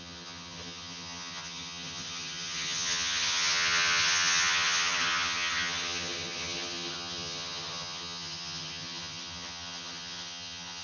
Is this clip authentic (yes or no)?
no